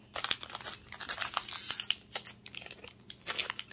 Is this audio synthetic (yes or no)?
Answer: no